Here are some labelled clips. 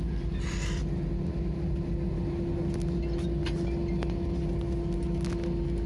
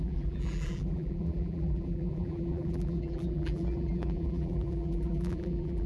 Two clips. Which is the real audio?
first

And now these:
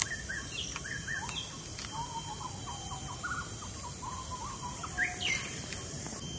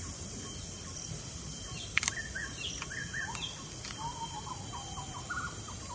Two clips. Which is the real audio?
first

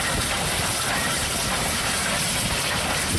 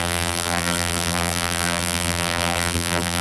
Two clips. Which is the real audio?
first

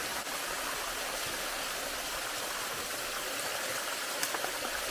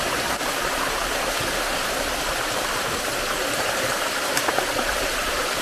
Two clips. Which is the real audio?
first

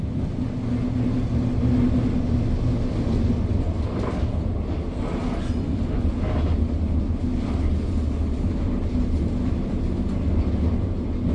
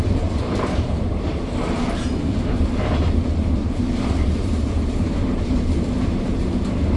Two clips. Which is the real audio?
first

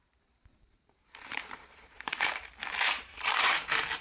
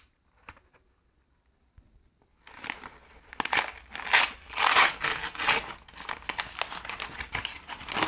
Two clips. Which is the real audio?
second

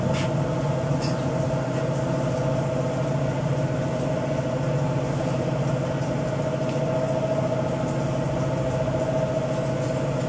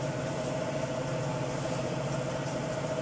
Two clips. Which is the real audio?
first